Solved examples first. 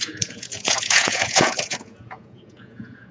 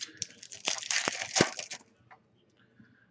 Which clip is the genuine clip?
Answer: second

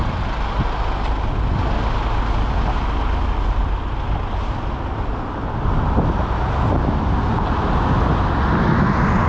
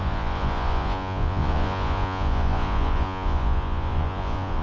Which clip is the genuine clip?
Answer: first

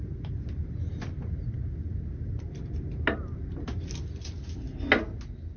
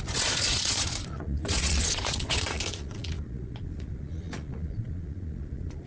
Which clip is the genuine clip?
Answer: first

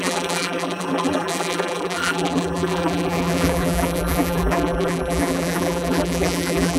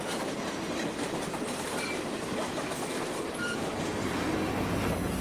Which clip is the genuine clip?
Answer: second